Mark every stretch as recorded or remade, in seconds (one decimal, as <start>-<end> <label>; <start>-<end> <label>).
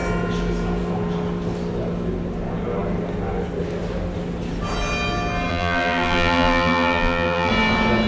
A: 0.0-5.5 recorded; 5.5-7.5 remade; 7.5-8.1 recorded